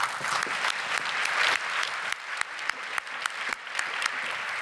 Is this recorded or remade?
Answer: remade